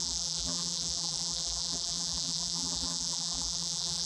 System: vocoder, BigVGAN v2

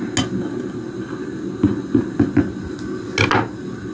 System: none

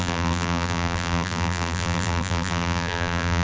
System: vocoder, BigVGAN v2